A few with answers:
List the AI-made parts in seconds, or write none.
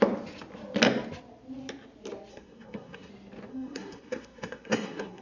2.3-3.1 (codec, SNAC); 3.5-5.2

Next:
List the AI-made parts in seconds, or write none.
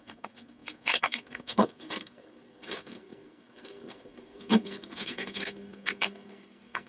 0.0-6.9 (codec, SNAC)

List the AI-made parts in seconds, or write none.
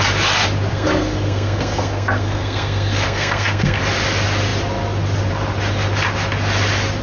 0.7-3.8 (codec, SNAC)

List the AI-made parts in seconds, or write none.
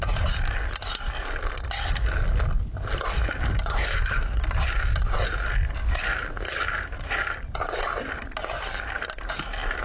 3.7-4.4 (codec, SNAC)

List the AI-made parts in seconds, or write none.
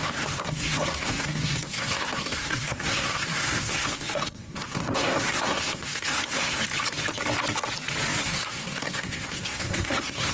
0.0-6.6 (codec, SNAC); 8.2-10.3